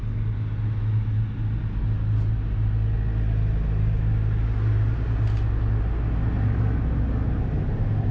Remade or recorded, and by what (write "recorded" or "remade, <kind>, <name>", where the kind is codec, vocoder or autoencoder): recorded